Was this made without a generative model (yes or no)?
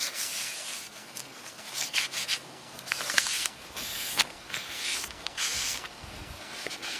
no